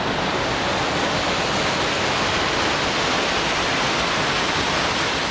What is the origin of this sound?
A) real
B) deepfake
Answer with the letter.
A